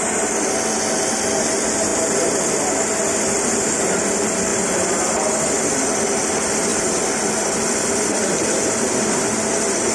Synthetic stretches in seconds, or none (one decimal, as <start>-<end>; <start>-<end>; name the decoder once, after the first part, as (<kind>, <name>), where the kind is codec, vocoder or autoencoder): 0.0-1.9 (vocoder, BigVGAN v2); 3.2-6.7; 7.4-9.9